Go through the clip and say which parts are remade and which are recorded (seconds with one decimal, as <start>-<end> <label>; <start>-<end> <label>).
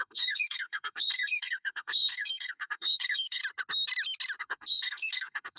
0.0-3.4 remade; 3.4-4.4 recorded; 4.4-5.6 remade